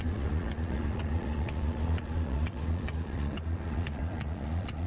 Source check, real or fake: fake